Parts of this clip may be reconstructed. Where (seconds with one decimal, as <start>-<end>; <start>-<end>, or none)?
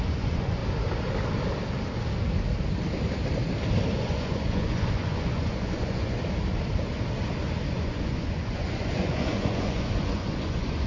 0.0-0.6; 4.0-6.2; 7.7-10.9